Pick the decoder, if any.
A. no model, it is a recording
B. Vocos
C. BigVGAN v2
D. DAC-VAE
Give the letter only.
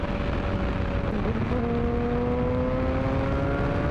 A